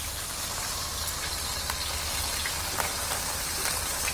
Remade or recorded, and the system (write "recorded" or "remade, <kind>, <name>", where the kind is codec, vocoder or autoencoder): recorded